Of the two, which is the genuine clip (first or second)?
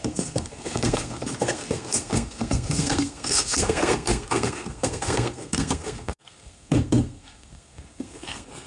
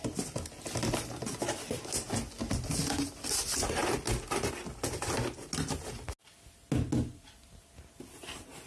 second